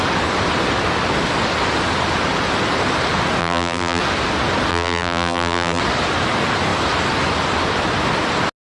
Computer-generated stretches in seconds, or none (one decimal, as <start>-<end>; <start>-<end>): 3.4-4.0; 4.7-5.8